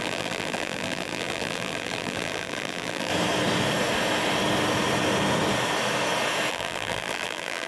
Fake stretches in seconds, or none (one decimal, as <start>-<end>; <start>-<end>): 0.0-3.1; 6.5-7.7